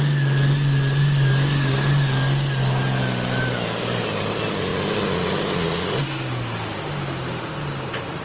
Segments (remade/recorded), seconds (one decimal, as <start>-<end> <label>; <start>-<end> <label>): 0.0-8.2 recorded